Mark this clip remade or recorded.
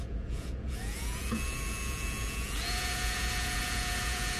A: remade